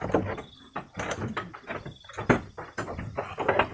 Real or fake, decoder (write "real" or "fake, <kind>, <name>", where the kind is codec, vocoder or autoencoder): real